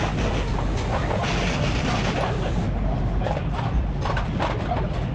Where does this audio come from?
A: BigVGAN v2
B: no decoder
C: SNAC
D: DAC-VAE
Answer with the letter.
B